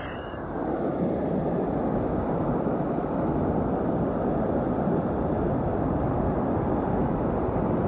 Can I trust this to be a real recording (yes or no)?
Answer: yes